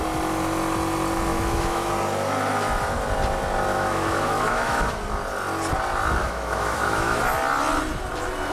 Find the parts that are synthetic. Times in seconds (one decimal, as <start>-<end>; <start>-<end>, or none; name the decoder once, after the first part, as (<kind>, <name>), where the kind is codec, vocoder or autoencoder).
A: 1.3-1.9 (autoencoder, DAC-VAE); 3.7-4.9; 6.2-7.2